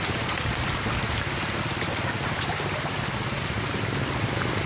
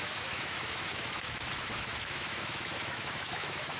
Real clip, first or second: first